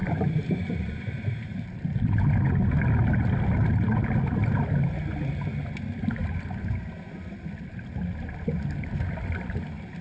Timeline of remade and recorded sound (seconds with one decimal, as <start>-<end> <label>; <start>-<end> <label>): 0.0-1.7 remade; 1.7-10.0 recorded